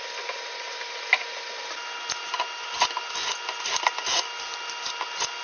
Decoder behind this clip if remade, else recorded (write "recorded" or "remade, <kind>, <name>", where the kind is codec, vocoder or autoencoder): recorded